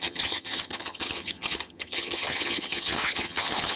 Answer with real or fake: fake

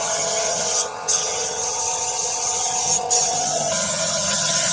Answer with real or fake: fake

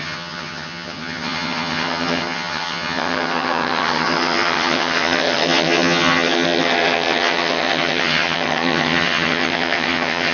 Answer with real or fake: fake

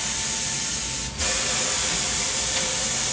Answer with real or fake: real